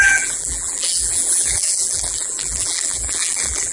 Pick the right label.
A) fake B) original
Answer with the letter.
A